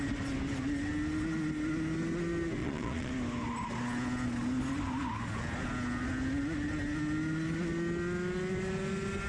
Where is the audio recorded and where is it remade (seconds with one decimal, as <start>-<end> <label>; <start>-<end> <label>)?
0.0-2.6 recorded; 2.6-3.1 remade; 3.1-9.3 recorded